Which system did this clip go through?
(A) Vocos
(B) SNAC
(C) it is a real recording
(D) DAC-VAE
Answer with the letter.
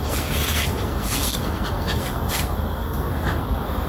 B